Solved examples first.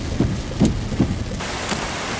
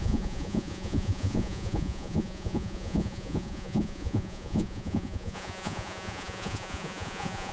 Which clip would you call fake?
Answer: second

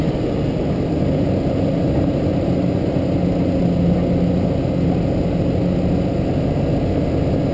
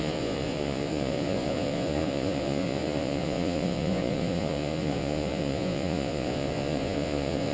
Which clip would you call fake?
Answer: second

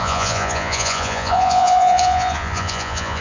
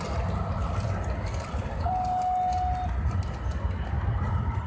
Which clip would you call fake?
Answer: first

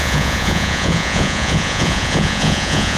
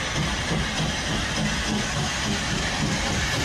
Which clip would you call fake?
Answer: first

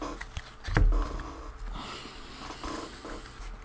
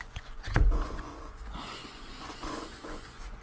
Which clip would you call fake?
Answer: second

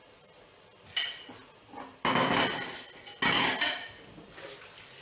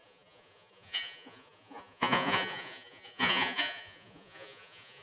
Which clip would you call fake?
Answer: second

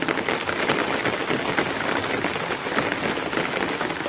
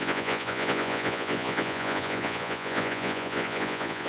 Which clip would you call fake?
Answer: second